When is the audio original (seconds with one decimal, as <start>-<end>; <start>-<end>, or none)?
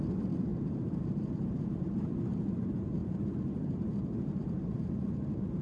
0.0-0.5; 2.1-3.0; 4.0-4.4; 5.0-5.6